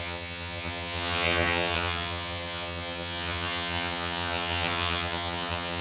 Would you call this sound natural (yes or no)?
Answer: no